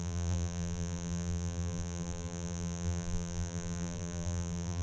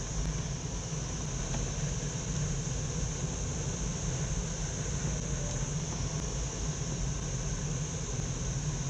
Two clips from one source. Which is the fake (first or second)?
first